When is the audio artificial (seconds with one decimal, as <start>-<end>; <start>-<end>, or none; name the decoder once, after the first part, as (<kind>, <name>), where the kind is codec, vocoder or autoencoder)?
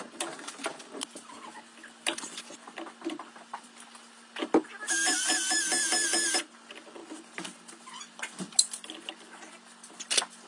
none